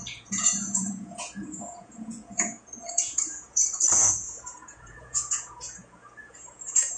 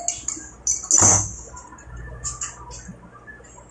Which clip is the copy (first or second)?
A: first